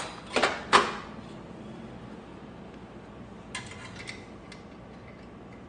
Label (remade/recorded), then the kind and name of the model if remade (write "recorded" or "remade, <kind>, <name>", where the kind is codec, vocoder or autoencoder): recorded